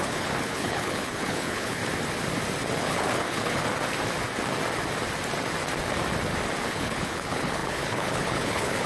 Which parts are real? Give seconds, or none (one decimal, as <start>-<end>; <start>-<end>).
1.8-2.8; 3.6-6.7